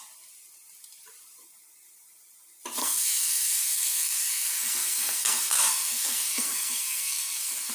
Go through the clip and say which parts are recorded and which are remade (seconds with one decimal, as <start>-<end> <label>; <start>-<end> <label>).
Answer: 0.0-2.8 recorded; 2.8-7.7 remade